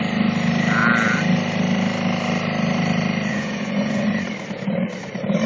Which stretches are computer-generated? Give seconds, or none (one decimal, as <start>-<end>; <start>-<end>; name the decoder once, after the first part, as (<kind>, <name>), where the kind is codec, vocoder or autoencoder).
3.3-4.1 (vocoder, Vocos)